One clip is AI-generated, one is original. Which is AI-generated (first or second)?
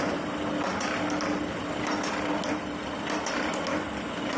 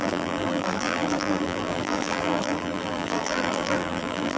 second